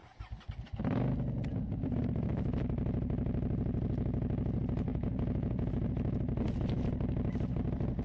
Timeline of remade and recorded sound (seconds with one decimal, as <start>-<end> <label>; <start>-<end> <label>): 0.0-1.5 recorded; 1.5-2.0 remade; 2.0-4.9 recorded; 4.9-5.7 remade; 5.7-8.0 recorded